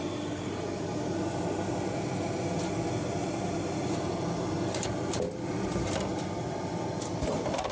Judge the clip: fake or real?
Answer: real